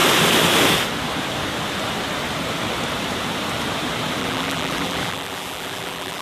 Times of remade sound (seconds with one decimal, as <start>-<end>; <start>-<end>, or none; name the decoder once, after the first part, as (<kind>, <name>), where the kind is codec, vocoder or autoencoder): 4.2-6.2 (vocoder, BigVGAN v2)